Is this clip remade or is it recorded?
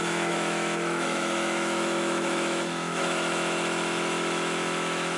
remade